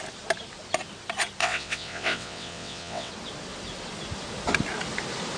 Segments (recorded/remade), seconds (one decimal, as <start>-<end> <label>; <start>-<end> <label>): 0.0-1.4 recorded; 1.4-3.1 remade; 3.1-5.4 recorded